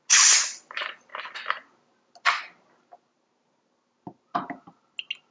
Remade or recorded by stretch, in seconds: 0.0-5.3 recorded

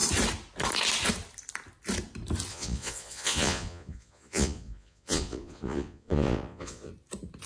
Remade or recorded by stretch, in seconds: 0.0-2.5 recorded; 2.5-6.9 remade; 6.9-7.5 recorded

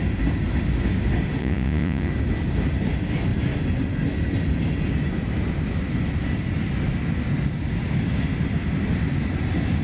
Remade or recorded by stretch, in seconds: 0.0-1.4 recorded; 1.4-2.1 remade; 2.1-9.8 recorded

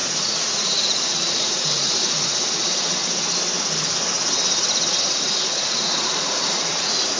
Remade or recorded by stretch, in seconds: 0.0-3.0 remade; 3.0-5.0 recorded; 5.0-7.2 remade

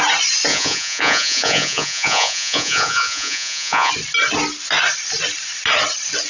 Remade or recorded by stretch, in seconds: 0.0-0.5 recorded; 0.5-3.9 remade; 3.9-6.3 recorded